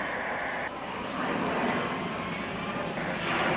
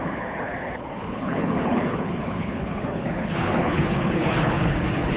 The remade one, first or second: second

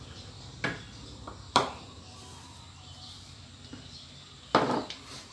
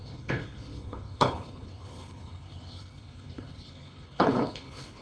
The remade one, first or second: second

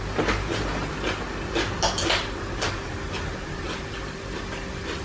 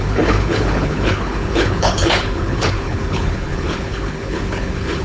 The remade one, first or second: second